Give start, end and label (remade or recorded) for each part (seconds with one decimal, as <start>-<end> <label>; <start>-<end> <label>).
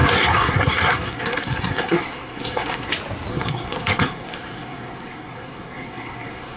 0.0-2.9 remade; 2.9-3.3 recorded; 3.3-6.6 remade